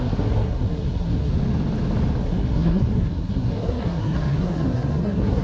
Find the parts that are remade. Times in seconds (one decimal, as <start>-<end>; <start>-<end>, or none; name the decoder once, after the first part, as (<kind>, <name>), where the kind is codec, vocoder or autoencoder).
0.0-1.3 (codec, SNAC); 2.2-5.4